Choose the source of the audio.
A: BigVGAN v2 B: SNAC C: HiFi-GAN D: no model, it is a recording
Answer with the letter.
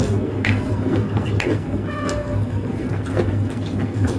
B